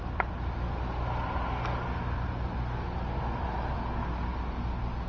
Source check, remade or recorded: recorded